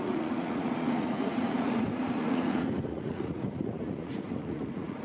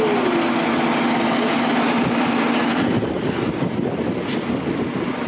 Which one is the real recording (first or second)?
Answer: second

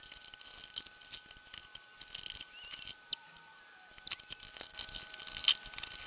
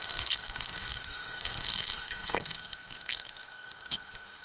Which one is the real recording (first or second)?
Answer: first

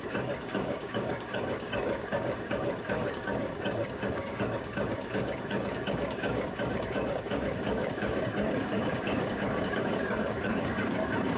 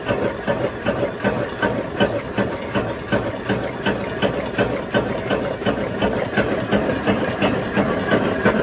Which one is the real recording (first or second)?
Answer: second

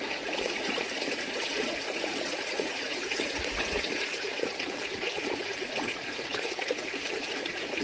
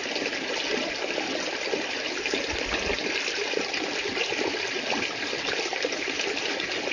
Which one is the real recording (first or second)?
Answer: second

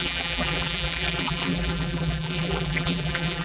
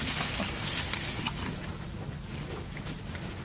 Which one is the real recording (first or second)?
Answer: second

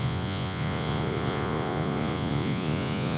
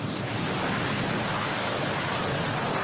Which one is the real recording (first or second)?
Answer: second